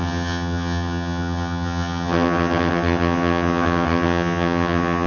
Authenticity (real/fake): fake